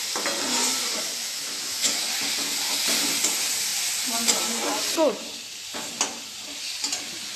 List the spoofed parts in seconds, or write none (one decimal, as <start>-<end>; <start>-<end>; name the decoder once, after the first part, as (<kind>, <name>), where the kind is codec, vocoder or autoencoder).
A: 1.2-2.1 (autoencoder, DAC-VAE)